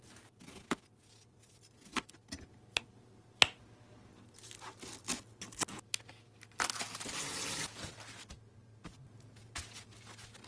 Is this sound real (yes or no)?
yes